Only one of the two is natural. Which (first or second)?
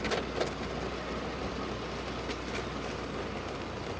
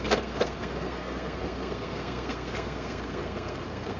first